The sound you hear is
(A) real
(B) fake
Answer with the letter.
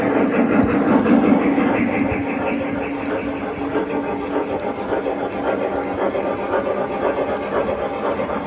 A